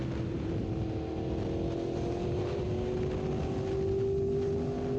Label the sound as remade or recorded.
recorded